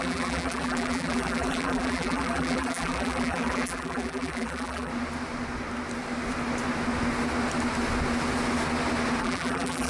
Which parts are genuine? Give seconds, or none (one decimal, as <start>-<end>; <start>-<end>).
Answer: 4.9-9.2